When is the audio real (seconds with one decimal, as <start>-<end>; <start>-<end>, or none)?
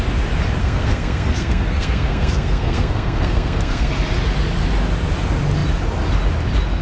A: 0.0-0.6; 3.9-6.8